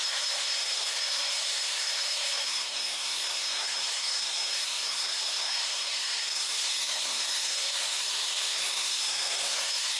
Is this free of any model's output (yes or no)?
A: no